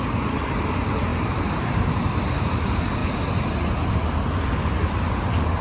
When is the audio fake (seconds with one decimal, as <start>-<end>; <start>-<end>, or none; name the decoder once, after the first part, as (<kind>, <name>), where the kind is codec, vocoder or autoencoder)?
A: 1.1-1.6 (vocoder, BigVGAN v2)